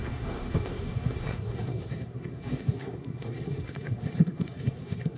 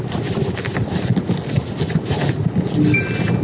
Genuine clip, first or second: second